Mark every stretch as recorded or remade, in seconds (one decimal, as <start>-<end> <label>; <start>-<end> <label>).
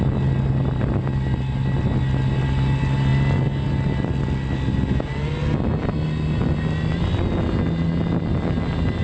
0.0-9.0 recorded